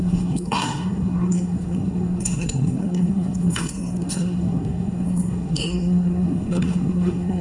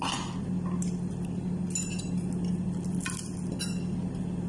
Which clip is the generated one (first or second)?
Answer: first